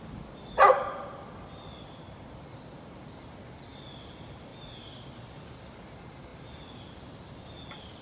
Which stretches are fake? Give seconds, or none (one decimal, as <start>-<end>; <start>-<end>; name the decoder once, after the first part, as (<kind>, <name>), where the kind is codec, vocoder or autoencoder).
none